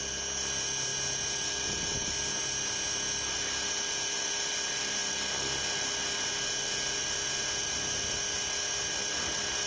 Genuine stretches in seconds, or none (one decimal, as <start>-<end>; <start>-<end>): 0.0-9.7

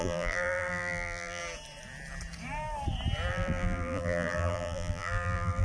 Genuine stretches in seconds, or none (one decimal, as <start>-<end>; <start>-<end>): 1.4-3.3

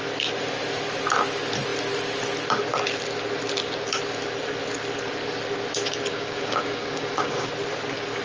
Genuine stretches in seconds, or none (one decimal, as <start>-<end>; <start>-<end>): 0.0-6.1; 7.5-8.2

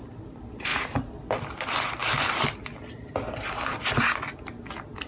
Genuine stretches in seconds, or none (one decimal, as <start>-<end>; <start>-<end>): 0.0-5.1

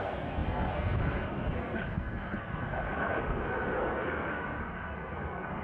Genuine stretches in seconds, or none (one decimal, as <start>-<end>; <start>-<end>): none

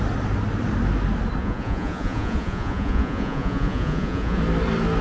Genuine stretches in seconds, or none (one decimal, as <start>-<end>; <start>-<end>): 0.0-1.4; 4.4-5.0